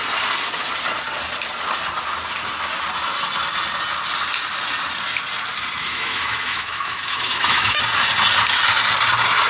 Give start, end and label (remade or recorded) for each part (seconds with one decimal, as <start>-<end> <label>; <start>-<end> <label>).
0.0-5.8 recorded; 5.8-7.8 remade; 7.8-9.5 recorded